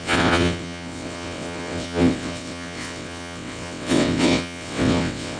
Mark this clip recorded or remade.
remade